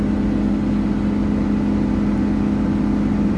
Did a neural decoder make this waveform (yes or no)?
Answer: no